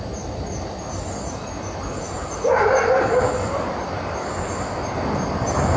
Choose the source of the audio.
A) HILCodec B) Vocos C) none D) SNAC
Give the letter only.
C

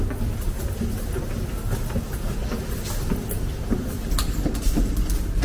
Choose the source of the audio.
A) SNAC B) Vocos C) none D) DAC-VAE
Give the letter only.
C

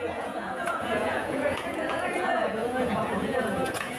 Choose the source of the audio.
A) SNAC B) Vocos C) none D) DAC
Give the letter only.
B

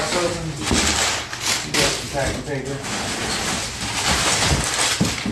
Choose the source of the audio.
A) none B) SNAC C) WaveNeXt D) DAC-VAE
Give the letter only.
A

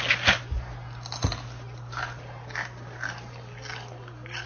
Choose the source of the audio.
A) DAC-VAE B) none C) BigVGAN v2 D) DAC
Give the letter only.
B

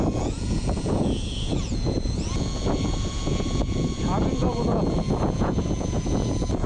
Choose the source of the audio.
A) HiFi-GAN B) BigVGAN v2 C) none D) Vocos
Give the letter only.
D